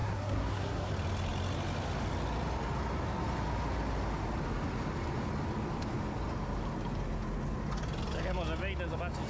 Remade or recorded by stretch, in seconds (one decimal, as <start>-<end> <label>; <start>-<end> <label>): 0.0-0.9 remade; 0.9-9.3 recorded